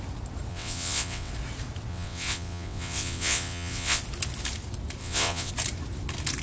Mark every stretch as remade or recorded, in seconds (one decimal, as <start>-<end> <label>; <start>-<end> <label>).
0.0-0.5 recorded; 0.5-1.3 remade; 1.3-1.9 recorded; 1.9-4.0 remade; 4.0-5.0 recorded; 5.0-5.5 remade; 5.5-6.4 recorded